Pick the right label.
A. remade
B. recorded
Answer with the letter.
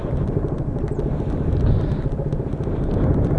B